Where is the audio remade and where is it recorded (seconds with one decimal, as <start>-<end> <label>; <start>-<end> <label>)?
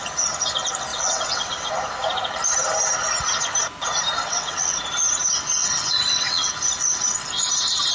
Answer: 0.0-0.9 recorded; 0.9-1.7 remade; 1.7-4.3 recorded; 4.3-4.8 remade; 4.8-5.6 recorded; 5.6-6.5 remade; 6.5-7.9 recorded